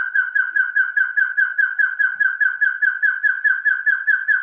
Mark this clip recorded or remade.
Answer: recorded